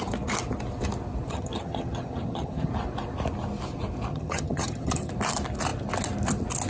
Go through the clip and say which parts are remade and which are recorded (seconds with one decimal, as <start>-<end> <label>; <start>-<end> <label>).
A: 0.0-1.3 recorded; 1.3-2.7 remade; 2.7-4.1 recorded; 4.1-5.1 remade; 5.1-6.7 recorded